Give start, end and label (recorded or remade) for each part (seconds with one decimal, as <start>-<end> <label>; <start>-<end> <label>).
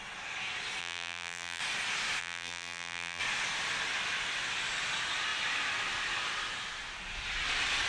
0.0-0.8 recorded; 0.8-1.6 remade; 1.6-2.2 recorded; 2.2-3.2 remade; 3.2-7.9 recorded